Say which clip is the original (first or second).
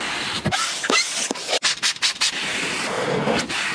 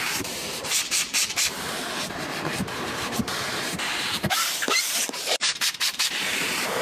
first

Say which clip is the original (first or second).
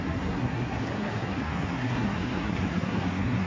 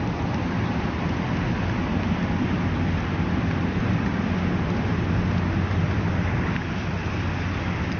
second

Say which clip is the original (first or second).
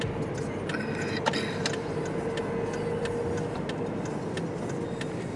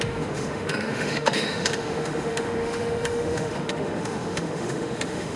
first